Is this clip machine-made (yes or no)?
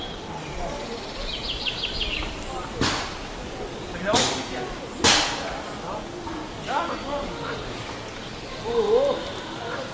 no